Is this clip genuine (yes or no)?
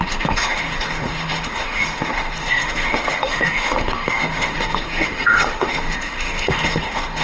no